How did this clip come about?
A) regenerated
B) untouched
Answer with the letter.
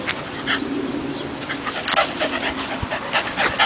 B